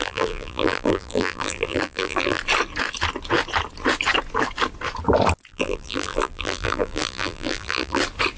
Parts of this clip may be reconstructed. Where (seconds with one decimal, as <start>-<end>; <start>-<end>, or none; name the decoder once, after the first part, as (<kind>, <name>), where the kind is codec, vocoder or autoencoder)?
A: 0.0-2.4 (vocoder, BigVGAN v2); 5.5-8.0